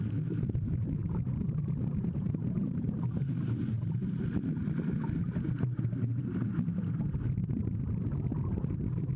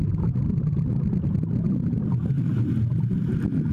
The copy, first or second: first